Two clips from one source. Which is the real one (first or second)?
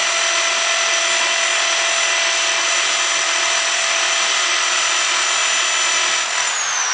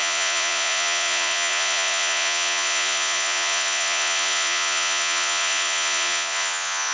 first